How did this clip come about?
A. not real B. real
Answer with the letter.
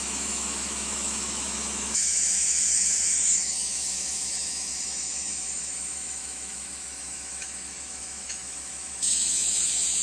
A